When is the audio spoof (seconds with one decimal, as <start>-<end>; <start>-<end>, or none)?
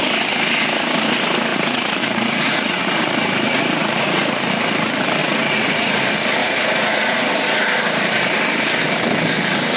1.5-3.0; 3.8-4.5; 5.2-6.0; 6.4-7.3